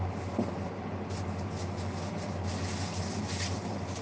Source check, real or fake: real